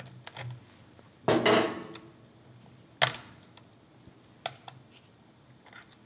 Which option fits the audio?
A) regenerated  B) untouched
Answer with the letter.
B